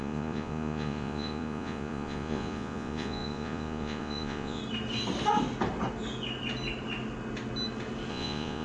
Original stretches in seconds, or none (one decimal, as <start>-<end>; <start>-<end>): 4.6-8.1